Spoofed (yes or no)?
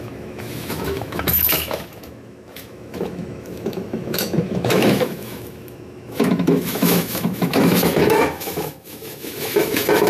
yes